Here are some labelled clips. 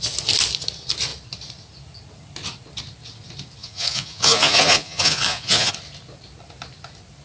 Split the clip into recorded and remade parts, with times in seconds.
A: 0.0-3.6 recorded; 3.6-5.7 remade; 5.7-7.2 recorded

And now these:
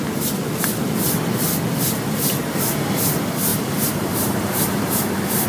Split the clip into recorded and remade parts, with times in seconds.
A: 0.0-3.5 recorded; 3.5-4.9 remade; 4.9-5.5 recorded

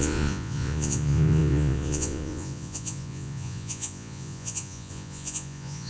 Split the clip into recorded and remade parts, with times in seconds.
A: 0.0-5.9 remade

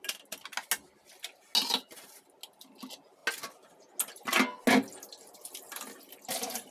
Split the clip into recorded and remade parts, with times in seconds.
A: 0.0-6.7 recorded

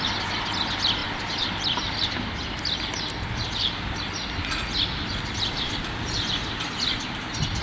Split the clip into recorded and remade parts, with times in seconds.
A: 0.0-1.0 recorded; 1.0-1.5 remade; 1.5-5.1 recorded; 5.1-7.6 remade

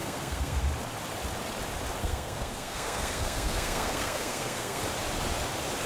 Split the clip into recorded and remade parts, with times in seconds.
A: 0.0-0.6 remade; 0.6-2.0 recorded; 2.0-4.8 remade; 4.8-5.9 recorded